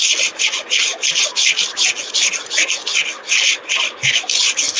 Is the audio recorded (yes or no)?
yes